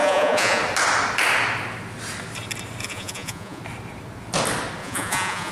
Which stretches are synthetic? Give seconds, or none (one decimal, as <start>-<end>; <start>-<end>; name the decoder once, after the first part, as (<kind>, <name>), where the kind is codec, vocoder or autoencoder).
0.0-0.6 (vocoder, Vocos); 2.8-3.6; 4.8-5.5